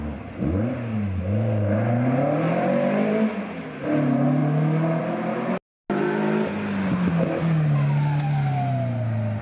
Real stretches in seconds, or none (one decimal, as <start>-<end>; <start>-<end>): 0.0-9.4